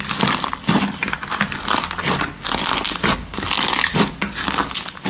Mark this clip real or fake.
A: real